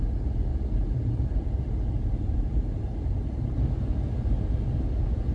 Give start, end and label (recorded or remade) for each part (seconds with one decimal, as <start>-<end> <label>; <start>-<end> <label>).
0.0-0.5 recorded; 0.5-3.7 remade; 3.7-5.3 recorded